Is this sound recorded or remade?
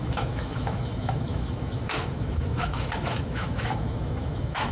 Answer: remade